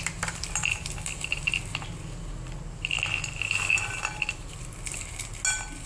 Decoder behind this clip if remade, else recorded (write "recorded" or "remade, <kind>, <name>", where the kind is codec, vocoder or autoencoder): recorded